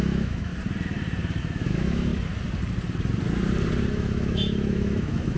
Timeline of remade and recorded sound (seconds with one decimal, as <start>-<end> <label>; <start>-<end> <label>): 0.0-0.5 remade; 0.5-1.4 recorded; 1.4-2.1 remade; 2.1-3.9 recorded; 3.9-5.4 remade